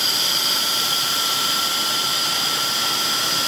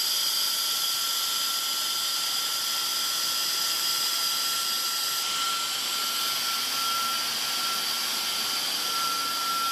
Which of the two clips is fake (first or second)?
first